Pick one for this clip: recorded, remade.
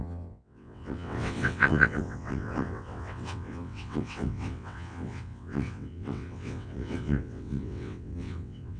remade